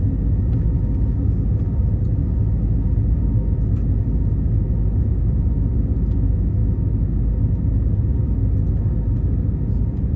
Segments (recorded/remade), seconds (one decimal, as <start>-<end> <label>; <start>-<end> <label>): 0.0-10.2 recorded